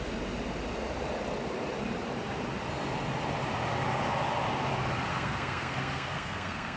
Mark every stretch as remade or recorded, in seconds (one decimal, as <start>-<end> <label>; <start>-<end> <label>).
0.0-5.1 recorded; 5.1-6.8 remade

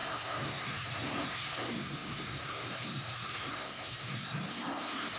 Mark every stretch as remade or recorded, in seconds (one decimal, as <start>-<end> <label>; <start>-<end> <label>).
0.0-5.2 remade

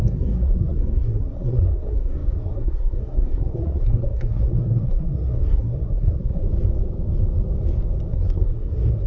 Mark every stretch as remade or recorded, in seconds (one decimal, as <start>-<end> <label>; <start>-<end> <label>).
0.0-6.4 remade; 6.4-8.1 recorded; 8.1-9.1 remade

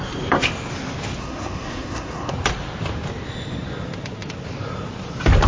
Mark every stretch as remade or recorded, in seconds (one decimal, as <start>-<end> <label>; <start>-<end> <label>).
0.0-1.2 recorded; 1.2-2.3 remade; 2.3-5.5 recorded

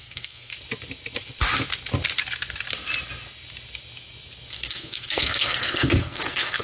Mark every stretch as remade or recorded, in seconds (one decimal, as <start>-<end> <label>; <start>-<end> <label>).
0.0-0.5 remade; 0.5-4.5 recorded; 4.5-6.6 remade

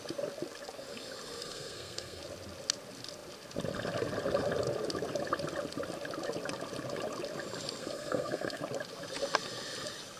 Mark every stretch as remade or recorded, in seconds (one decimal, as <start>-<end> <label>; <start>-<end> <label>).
0.0-1.4 recorded; 1.4-2.2 remade; 2.2-7.8 recorded; 7.8-8.6 remade; 8.6-10.2 recorded

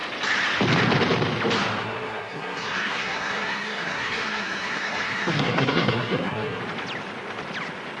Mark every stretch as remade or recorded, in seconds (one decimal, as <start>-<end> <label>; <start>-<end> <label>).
0.0-1.8 recorded; 1.8-6.6 remade; 6.6-8.0 recorded

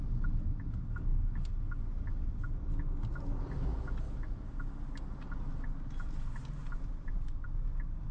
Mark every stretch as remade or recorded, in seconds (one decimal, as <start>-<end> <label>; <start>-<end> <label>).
0.0-8.1 recorded